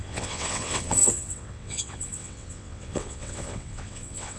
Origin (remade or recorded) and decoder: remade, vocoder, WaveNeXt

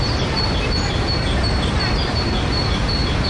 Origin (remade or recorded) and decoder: recorded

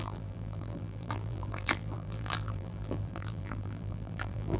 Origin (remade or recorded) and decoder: remade, vocoder, BigVGAN v2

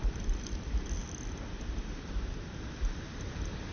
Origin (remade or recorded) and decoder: remade, vocoder, BigVGAN v2